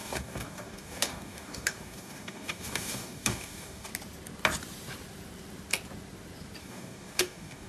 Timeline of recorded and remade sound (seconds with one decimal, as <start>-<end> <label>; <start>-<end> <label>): 0.0-3.9 remade; 3.9-6.6 recorded; 6.6-7.7 remade